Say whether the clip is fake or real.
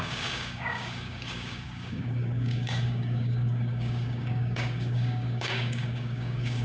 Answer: fake